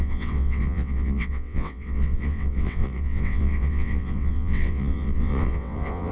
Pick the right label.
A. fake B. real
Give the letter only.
A